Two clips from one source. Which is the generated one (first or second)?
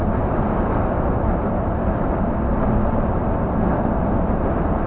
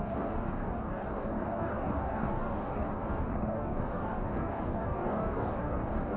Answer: second